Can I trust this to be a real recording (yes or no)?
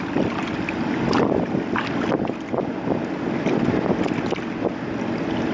yes